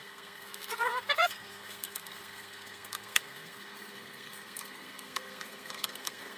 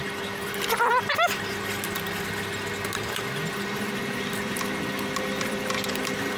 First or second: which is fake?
first